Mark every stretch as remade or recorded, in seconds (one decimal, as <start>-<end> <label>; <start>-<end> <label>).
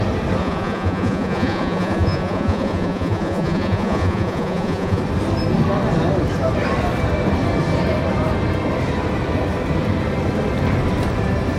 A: 0.0-0.4 recorded; 0.4-5.0 remade; 5.0-11.6 recorded